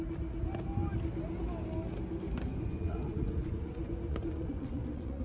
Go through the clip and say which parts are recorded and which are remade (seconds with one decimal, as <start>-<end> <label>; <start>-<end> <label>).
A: 0.0-2.5 recorded; 2.5-5.2 remade